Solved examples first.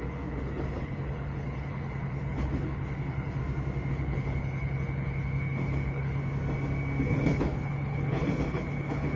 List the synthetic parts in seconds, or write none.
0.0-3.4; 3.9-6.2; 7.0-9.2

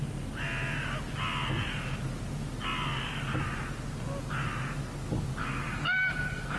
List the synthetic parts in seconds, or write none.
5.4-6.6

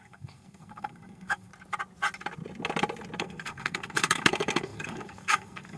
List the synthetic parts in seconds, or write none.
0.0-1.5; 3.2-5.8